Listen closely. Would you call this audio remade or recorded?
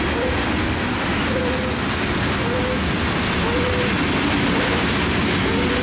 recorded